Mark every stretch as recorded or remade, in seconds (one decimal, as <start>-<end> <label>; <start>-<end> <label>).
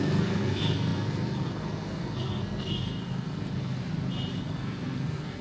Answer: 0.0-3.8 remade; 3.8-4.4 recorded; 4.4-5.4 remade